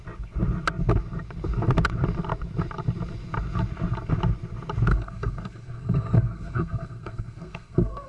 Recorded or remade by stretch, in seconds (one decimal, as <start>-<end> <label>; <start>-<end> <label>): 0.0-4.9 recorded; 4.9-8.1 remade